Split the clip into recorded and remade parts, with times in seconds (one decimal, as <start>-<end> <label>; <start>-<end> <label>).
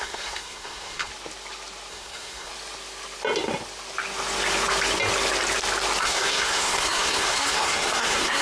0.0-1.1 remade; 1.1-1.9 recorded; 1.9-2.5 remade; 2.5-6.0 recorded; 6.0-8.4 remade